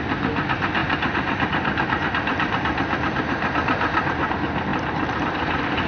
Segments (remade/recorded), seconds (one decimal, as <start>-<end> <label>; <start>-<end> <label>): 0.0-0.8 recorded; 0.8-4.3 remade; 4.3-4.7 recorded; 4.7-5.5 remade; 5.5-5.9 recorded